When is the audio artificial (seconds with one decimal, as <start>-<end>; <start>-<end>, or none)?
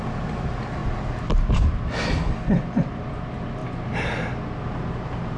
0.0-0.8; 2.9-3.6; 4.6-5.4